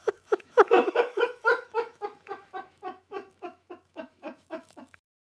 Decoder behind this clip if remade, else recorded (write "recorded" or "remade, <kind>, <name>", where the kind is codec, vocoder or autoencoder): remade, autoencoder, DAC-VAE